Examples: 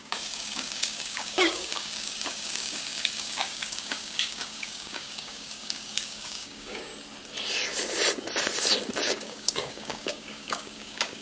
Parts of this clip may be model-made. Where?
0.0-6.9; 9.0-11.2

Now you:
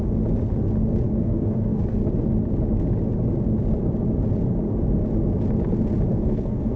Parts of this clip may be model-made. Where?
1.2-2.0; 6.1-6.8